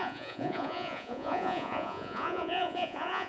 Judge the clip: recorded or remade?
remade